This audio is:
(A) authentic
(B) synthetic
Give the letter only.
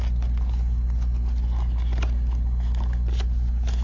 A